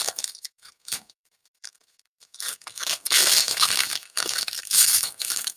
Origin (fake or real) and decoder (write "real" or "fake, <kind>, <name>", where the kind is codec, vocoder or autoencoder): fake, codec, SNAC